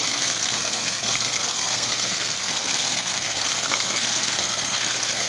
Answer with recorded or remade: remade